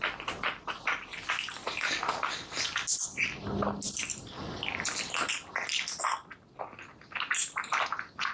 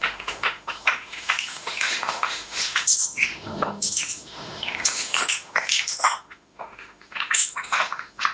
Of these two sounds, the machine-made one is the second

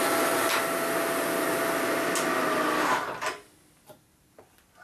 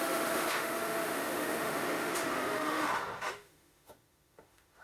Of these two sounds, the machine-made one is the second